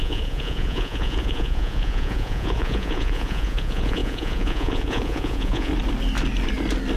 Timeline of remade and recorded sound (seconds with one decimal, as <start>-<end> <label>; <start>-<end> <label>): 0.0-5.7 remade; 5.7-7.0 recorded